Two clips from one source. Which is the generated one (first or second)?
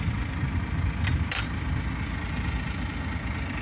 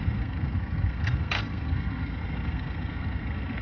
second